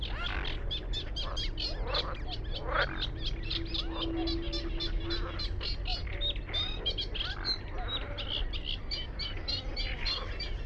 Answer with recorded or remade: recorded